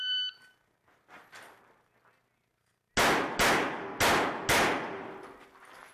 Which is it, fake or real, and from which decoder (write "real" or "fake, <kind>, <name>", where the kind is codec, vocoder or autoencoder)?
real